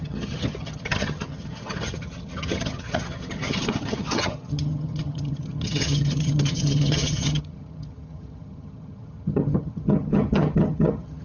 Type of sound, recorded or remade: remade